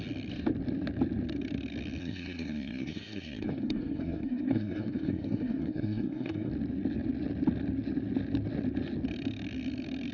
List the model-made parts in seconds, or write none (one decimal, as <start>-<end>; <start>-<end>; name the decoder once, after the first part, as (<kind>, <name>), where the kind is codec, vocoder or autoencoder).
2.0-6.5 (codec, SNAC)